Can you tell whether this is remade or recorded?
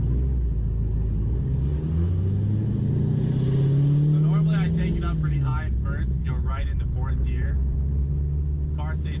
recorded